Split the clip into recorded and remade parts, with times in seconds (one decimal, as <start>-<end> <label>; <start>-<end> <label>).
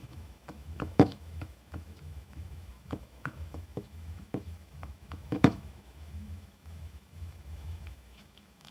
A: 0.0-8.7 remade